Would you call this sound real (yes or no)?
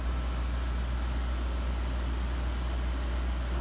yes